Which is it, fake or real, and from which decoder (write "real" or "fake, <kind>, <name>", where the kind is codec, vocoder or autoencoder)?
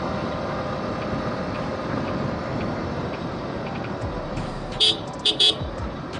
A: fake, vocoder, BigVGAN v2